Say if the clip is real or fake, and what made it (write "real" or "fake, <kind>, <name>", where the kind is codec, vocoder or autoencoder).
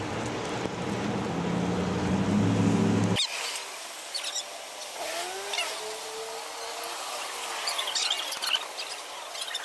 real